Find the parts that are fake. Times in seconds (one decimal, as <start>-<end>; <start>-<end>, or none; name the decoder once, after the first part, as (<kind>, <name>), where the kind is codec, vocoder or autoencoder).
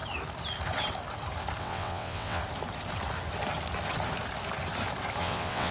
1.6-2.4 (vocoder, WaveNeXt); 5.2-5.7